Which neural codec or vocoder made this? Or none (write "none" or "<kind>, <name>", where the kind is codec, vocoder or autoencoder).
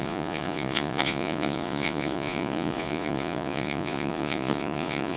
vocoder, Vocos